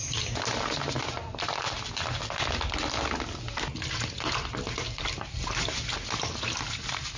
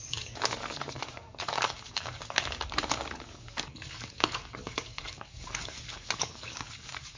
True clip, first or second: first